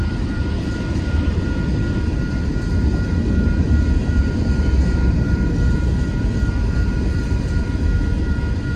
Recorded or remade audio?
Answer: remade